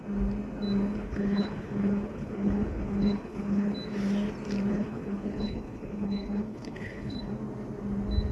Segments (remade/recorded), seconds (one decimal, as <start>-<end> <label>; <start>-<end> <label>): 0.0-0.9 recorded; 0.9-3.7 remade; 3.7-4.7 recorded; 4.7-7.3 remade; 7.3-8.3 recorded